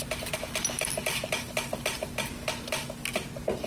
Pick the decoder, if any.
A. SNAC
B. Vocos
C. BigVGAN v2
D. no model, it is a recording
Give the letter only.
D